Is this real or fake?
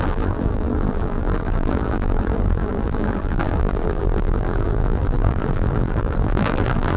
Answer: fake